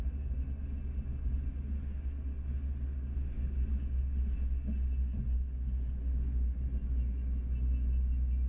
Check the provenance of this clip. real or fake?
real